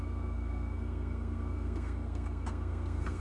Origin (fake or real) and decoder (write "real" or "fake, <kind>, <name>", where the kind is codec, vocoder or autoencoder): fake, codec, SNAC